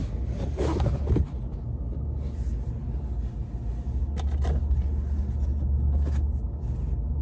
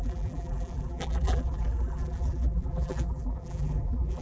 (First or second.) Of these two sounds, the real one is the first